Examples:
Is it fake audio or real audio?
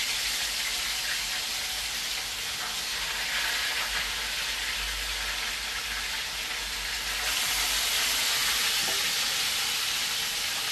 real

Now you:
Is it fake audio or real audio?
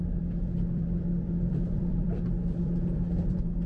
fake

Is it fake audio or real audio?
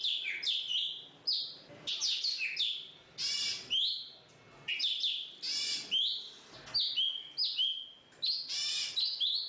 real